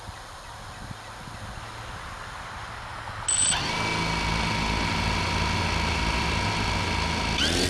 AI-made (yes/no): no